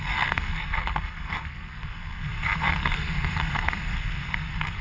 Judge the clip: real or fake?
fake